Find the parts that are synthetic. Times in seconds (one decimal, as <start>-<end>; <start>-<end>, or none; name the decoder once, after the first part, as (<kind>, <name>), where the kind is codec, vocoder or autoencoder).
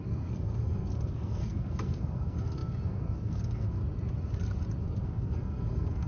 0.0-3.8 (codec, SNAC); 4.8-6.1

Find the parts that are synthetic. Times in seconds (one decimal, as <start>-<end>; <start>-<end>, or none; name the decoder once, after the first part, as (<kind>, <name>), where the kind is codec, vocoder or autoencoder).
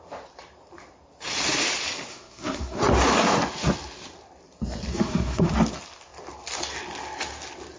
2.1-2.8 (codec, SNAC); 4.9-5.5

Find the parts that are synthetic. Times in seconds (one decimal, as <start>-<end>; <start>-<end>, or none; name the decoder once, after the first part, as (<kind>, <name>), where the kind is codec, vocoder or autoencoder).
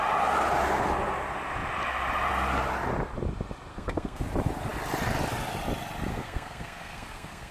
3.7-4.2 (codec, SNAC); 6.1-7.5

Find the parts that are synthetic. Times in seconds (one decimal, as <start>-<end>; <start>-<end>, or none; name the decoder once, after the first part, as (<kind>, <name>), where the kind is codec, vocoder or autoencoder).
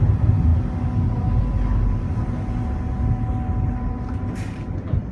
none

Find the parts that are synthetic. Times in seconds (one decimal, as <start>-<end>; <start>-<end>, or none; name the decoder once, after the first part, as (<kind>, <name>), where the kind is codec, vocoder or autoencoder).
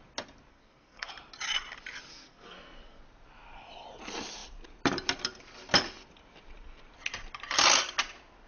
0.5-1.1 (codec, SNAC); 2.1-3.0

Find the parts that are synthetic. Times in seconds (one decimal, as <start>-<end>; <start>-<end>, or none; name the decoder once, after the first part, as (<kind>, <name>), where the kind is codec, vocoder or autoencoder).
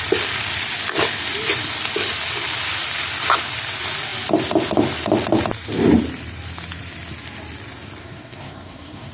8.0-9.1 (codec, SNAC)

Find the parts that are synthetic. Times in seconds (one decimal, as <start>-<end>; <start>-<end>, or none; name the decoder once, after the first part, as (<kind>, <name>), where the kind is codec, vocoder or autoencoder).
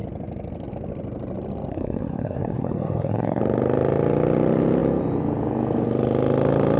1.7-3.4 (codec, SNAC)